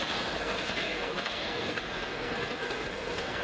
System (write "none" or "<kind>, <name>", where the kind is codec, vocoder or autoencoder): codec, SNAC